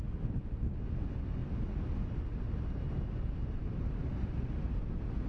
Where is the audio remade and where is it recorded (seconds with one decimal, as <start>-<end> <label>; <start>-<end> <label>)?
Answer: 0.0-5.3 recorded